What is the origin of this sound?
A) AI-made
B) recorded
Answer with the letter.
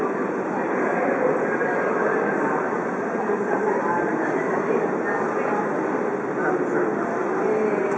B